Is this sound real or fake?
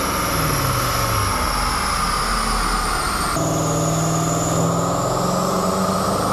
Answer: real